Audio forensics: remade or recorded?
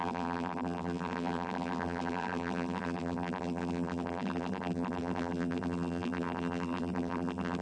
remade